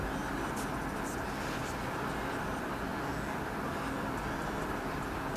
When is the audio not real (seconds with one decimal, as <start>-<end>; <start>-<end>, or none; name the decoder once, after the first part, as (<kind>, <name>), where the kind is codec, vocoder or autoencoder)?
none